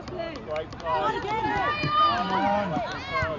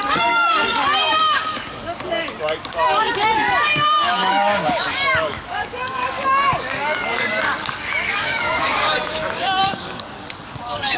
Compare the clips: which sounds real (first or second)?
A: first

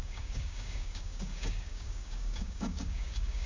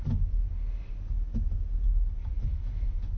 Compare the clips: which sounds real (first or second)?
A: second